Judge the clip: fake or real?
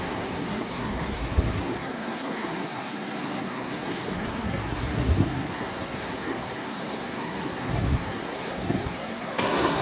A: fake